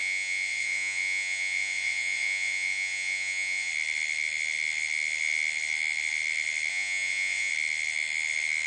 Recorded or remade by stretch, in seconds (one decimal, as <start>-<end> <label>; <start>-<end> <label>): 0.0-3.7 remade; 3.7-6.7 recorded; 6.7-7.5 remade; 7.5-8.7 recorded